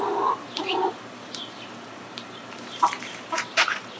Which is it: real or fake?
fake